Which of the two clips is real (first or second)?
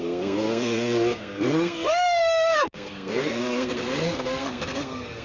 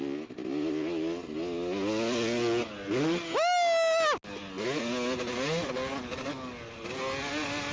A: second